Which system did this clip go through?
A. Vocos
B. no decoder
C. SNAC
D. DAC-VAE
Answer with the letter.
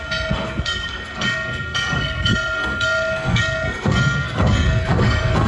C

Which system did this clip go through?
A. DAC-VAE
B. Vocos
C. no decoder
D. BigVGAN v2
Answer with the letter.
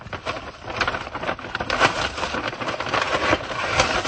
C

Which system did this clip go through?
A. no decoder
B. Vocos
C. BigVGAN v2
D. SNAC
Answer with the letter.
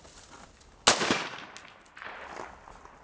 A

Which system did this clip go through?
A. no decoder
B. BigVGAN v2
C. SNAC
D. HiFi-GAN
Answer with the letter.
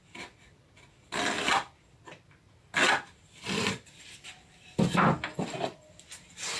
A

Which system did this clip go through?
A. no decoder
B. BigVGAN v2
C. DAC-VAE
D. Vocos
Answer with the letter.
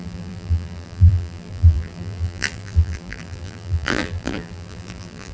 B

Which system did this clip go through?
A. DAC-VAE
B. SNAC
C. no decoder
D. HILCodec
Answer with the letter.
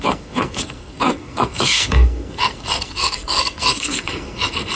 B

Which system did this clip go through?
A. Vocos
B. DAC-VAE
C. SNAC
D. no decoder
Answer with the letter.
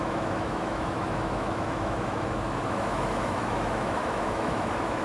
B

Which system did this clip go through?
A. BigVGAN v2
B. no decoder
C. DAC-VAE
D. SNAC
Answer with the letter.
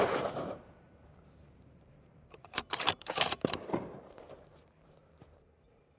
A